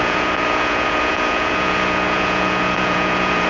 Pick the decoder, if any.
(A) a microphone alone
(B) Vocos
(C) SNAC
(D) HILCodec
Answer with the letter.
B